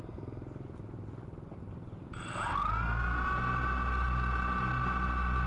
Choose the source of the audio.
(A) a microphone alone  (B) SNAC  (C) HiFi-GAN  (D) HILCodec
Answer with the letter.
A